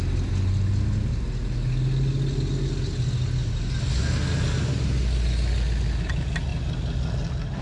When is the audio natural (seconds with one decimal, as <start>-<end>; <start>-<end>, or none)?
0.0-7.6